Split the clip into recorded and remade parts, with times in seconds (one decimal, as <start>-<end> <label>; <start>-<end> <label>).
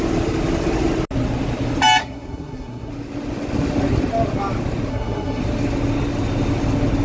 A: 0.0-2.0 recorded; 2.0-2.9 remade; 2.9-4.9 recorded; 4.9-5.4 remade; 5.4-7.0 recorded